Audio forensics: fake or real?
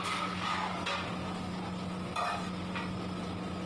real